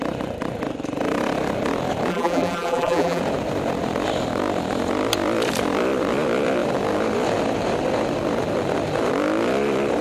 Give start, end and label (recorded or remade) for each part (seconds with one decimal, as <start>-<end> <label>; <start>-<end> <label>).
0.0-2.1 recorded; 2.1-3.2 remade; 3.2-10.0 recorded